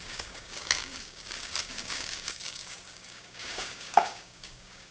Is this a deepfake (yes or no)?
yes